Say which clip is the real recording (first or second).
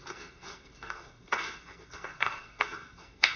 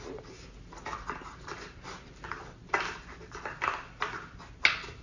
second